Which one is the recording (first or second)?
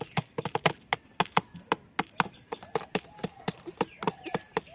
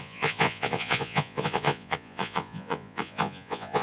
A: first